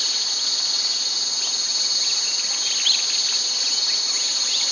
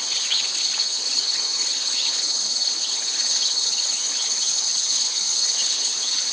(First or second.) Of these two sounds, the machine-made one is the second